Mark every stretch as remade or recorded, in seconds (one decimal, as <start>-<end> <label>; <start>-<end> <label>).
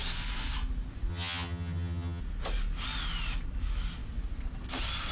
0.0-1.1 recorded; 1.1-2.2 remade; 2.2-5.1 recorded